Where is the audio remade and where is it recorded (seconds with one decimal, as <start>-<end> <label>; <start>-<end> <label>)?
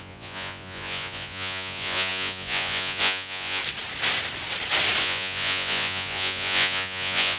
0.0-3.6 remade; 3.6-5.0 recorded; 5.0-7.4 remade